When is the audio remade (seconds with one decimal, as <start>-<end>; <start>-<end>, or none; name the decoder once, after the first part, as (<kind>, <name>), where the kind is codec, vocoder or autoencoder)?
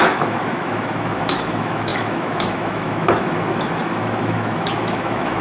0.0-5.4 (autoencoder, DAC-VAE)